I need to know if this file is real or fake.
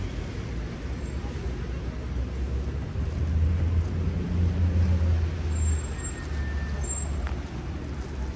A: real